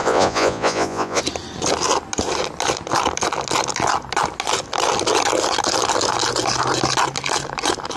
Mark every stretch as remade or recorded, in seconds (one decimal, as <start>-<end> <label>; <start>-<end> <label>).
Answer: 0.0-1.2 remade; 1.2-8.0 recorded